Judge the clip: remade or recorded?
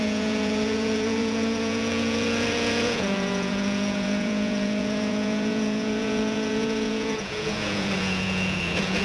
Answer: remade